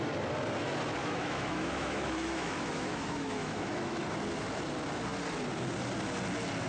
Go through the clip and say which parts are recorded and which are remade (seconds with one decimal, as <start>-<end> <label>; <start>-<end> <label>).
0.0-1.0 recorded; 1.0-4.0 remade; 4.0-6.7 recorded